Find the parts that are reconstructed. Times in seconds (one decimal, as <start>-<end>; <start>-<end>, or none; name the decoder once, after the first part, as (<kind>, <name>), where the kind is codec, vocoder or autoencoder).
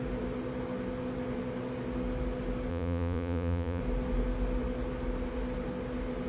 2.7-3.8 (vocoder, Vocos)